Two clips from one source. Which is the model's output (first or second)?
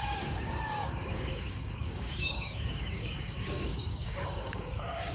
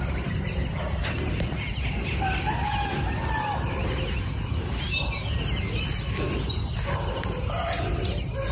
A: first